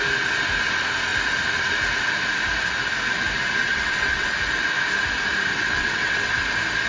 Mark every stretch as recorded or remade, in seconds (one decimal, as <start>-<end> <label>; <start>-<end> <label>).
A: 0.0-3.6 recorded; 3.6-4.3 remade; 4.3-5.5 recorded; 5.5-6.3 remade; 6.3-6.9 recorded